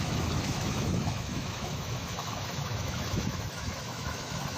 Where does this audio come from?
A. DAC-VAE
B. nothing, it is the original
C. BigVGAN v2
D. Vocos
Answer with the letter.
A